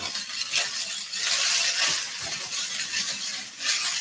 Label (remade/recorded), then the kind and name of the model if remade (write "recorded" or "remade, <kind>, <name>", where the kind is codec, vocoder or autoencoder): recorded